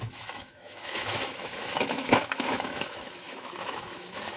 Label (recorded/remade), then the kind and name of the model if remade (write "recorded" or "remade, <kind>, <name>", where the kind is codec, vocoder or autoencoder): remade, autoencoder, DAC-VAE